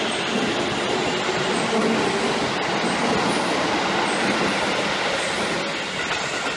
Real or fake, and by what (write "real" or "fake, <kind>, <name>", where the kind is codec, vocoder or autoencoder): real